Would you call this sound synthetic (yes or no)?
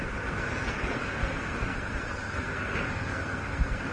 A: yes